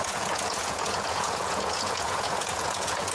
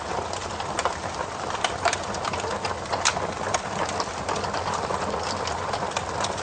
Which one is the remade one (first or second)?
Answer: first